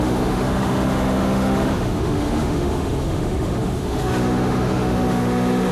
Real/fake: fake